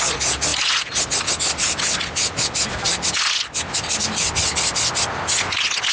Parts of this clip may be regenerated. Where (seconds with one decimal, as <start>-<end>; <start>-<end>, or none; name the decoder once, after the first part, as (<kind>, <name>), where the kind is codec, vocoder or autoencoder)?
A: none